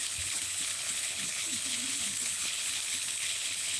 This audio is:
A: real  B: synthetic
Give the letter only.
B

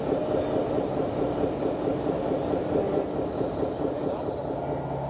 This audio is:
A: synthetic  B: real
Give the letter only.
B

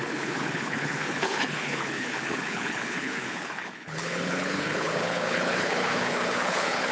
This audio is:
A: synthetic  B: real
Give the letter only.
A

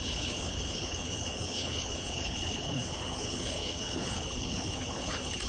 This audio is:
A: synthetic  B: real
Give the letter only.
A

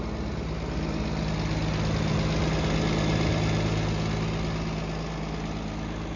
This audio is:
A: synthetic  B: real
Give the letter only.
B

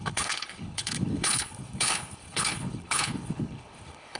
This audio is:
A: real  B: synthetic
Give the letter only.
B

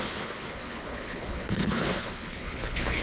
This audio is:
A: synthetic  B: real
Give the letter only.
A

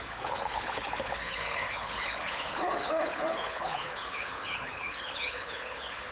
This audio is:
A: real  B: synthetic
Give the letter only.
B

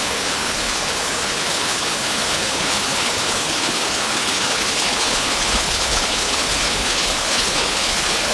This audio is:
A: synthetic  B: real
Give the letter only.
A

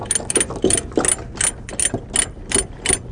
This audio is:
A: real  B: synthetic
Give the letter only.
A